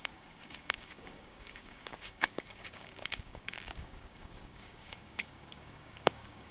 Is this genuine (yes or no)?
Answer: no